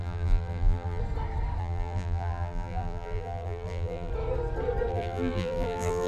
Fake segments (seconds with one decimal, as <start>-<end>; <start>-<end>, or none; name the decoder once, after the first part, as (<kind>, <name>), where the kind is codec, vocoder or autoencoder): 0.0-1.0 (vocoder, BigVGAN v2); 1.6-4.1; 4.9-6.1